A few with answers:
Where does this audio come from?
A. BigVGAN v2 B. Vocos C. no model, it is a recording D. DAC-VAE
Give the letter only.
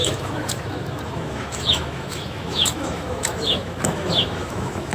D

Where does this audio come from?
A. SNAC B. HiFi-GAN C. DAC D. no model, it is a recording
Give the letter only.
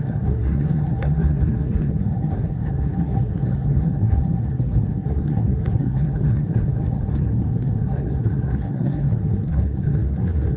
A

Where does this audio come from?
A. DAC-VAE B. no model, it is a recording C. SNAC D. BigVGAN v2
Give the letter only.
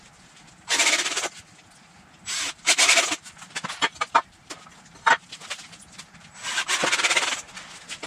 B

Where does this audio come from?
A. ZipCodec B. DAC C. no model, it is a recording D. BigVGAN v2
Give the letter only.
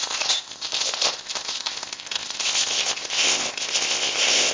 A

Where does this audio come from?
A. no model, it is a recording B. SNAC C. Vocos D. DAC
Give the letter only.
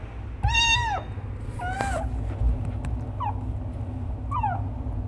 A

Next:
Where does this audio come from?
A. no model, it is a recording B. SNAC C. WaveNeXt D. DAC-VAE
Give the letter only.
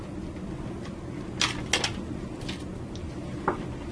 A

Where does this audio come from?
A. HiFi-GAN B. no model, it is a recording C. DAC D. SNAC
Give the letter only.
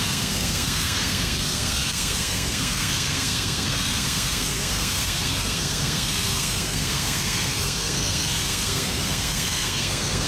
D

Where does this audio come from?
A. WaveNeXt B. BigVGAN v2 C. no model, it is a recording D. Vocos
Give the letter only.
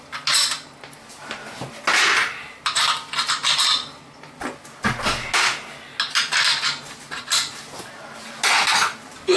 C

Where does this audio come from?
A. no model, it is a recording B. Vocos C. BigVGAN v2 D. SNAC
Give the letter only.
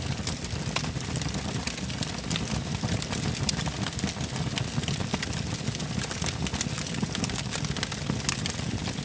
A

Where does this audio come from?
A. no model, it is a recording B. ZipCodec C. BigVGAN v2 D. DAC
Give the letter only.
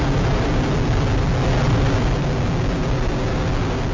A